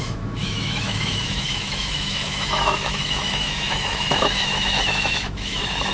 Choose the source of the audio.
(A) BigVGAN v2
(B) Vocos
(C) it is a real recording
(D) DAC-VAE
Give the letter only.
D